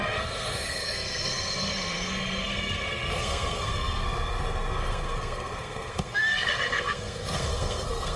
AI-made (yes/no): yes